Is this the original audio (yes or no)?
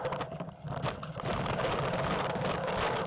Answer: yes